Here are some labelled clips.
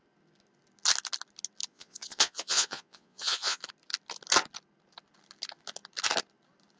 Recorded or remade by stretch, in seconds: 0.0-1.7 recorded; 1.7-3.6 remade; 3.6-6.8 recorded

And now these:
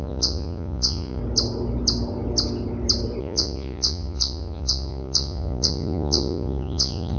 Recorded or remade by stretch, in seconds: 0.0-1.2 remade; 1.2-3.2 recorded; 3.2-7.2 remade

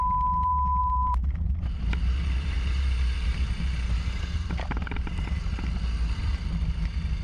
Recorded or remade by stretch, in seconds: 0.0-0.8 recorded; 0.8-5.1 remade; 5.1-7.2 recorded

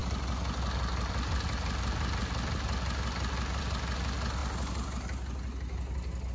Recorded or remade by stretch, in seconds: 0.0-6.3 recorded

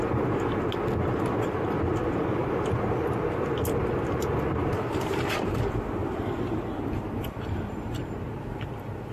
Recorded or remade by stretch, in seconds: 0.0-2.4 recorded; 2.4-3.8 remade; 3.8-4.6 recorded; 4.6-5.6 remade; 5.6-6.0 recorded; 6.0-8.0 remade; 8.0-9.1 recorded

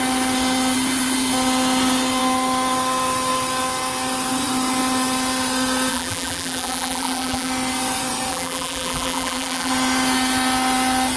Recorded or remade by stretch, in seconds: 0.0-5.9 recorded; 5.9-7.5 remade; 7.5-8.3 recorded; 8.3-9.7 remade; 9.7-11.2 recorded